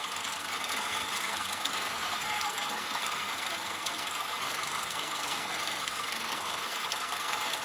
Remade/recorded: remade